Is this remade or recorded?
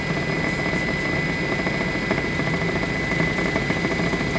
recorded